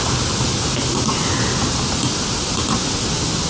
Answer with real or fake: real